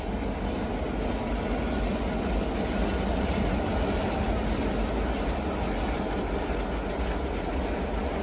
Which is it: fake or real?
real